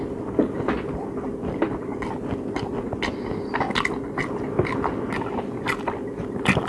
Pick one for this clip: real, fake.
real